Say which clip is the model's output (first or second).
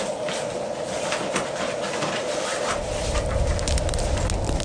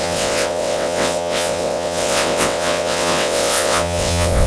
second